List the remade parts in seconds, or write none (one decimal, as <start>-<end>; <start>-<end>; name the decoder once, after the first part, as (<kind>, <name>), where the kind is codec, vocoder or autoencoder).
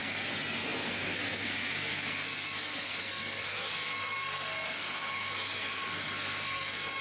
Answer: 0.0-7.0 (codec, SNAC)